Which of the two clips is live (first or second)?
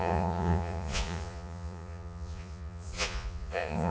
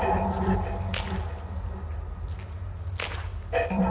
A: second